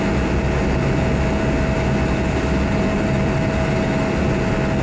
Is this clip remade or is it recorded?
recorded